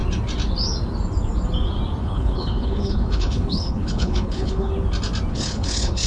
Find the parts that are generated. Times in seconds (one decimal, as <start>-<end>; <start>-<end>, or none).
2.0-4.7; 5.3-6.1